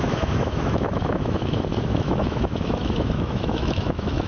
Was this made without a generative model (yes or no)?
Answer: no